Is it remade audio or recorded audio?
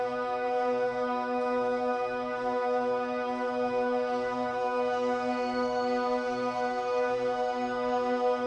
remade